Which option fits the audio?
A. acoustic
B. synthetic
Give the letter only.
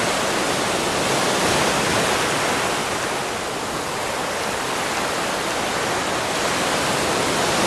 A